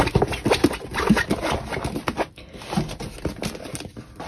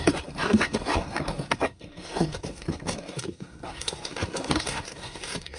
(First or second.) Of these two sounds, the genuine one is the first